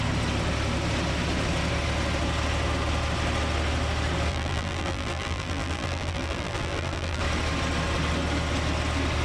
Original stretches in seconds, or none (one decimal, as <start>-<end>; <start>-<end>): 0.0-4.3; 7.2-9.2